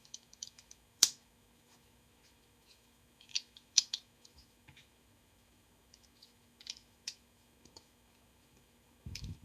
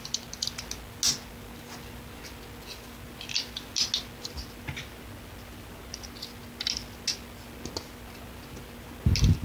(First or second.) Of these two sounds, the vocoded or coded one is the first